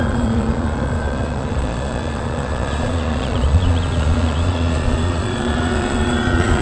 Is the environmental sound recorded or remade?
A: remade